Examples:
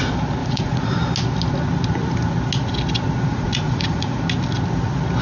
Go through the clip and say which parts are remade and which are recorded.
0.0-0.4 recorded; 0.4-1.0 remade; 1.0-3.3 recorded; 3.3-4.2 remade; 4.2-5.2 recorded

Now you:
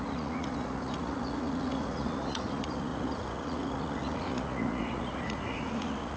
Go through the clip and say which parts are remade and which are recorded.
0.0-6.2 remade

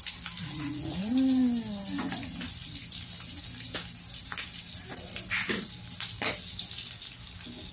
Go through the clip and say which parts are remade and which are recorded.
0.0-0.4 recorded; 0.4-1.1 remade; 1.1-7.7 recorded

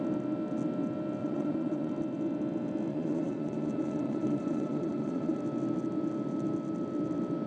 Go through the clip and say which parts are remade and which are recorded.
0.0-1.2 recorded; 1.2-1.9 remade; 1.9-2.9 recorded; 2.9-5.4 remade; 5.4-7.5 recorded